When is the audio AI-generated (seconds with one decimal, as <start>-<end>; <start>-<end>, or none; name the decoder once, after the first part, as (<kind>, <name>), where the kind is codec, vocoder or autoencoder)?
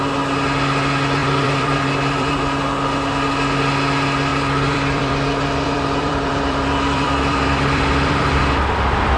1.2-2.4 (vocoder, BigVGAN v2); 4.3-8.4